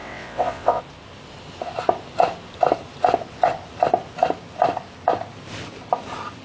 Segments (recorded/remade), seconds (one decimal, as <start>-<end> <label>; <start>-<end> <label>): 0.0-0.8 remade; 0.8-6.4 recorded